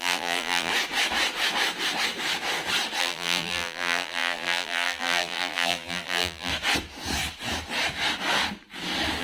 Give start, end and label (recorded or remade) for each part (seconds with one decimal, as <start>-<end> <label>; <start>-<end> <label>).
0.0-0.7 remade; 0.7-3.0 recorded; 3.0-6.5 remade; 6.5-9.2 recorded